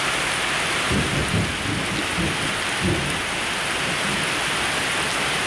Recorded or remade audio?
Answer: recorded